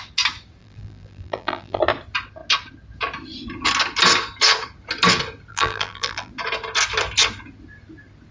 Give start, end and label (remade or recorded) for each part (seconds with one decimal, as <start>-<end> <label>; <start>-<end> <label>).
0.0-0.6 recorded; 0.6-1.8 remade; 1.8-5.5 recorded; 5.5-6.3 remade; 6.3-8.3 recorded